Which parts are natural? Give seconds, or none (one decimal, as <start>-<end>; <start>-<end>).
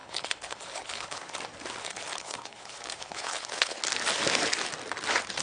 1.4-1.8; 3.8-5.4